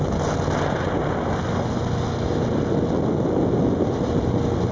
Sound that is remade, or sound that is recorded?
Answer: recorded